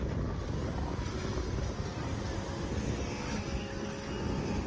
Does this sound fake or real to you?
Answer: real